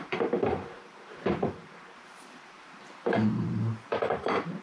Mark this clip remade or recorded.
remade